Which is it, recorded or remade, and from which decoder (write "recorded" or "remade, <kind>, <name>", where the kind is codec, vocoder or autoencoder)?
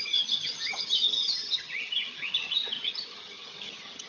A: remade, vocoder, HiFi-GAN